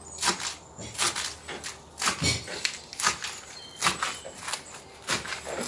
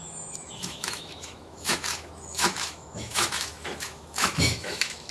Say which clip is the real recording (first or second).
first